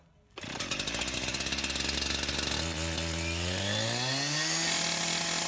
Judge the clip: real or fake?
real